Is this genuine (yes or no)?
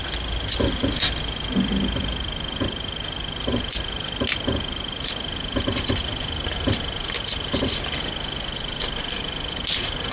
yes